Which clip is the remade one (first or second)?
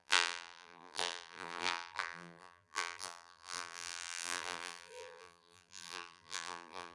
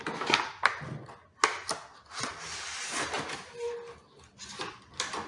first